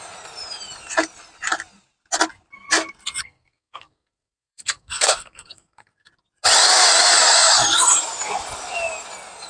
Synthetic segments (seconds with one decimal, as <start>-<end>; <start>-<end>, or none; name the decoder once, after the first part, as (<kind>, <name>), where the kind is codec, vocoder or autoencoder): 3.2-6.1 (codec, SNAC)